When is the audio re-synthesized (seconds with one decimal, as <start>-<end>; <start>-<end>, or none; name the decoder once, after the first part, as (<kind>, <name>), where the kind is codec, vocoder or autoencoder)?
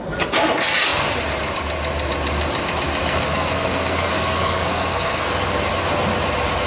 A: 3.0-5.3 (codec, SNAC)